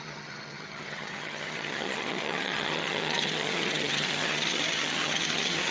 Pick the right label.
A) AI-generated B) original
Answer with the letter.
A